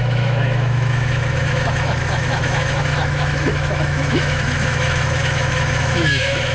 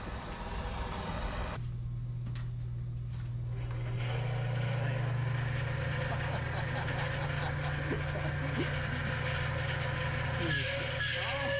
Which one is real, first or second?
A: second